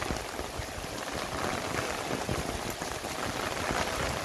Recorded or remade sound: recorded